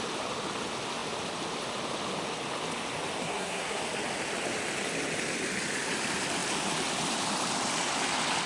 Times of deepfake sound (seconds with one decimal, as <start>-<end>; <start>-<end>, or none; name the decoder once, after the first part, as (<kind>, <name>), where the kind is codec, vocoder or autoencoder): 3.2-3.8 (codec, SNAC)